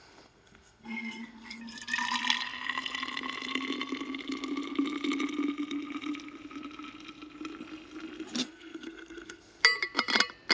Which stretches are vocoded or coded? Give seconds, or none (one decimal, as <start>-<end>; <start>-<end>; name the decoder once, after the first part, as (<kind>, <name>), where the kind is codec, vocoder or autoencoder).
0.0-1.6 (codec, SNAC); 8.4-9.6